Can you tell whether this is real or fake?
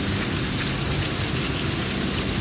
real